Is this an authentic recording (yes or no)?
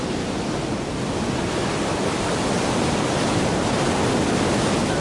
yes